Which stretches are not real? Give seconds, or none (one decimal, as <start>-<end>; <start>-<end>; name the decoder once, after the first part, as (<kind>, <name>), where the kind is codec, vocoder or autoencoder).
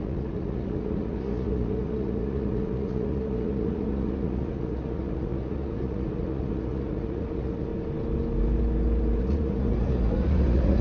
0.0-7.7 (vocoder, Vocos); 9.2-10.8